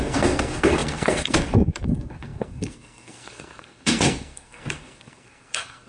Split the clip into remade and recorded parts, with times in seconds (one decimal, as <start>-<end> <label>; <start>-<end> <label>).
0.0-5.9 remade